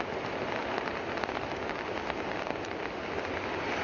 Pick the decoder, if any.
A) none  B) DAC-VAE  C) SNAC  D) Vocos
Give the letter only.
A